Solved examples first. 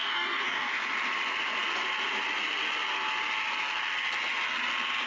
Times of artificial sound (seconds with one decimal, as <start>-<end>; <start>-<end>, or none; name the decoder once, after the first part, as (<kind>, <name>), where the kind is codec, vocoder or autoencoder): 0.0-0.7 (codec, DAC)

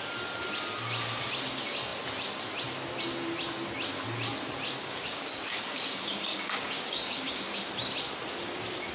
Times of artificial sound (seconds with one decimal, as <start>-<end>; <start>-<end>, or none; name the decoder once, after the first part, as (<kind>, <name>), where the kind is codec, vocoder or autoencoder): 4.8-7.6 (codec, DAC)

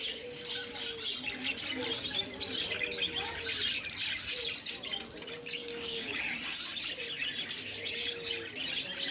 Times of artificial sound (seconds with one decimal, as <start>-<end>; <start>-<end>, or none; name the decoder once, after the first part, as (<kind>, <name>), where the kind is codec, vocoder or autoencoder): 5.6-6.2 (codec, DAC)

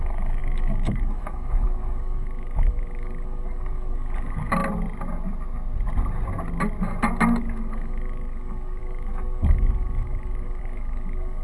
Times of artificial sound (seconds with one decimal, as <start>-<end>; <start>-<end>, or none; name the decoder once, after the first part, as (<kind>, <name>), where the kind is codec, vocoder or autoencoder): 0.0-4.6 (codec, DAC); 7.4-11.4